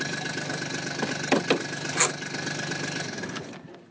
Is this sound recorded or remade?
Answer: recorded